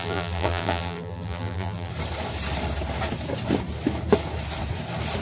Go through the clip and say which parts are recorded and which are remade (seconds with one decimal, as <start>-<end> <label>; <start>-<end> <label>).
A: 0.0-1.9 remade; 1.9-5.2 recorded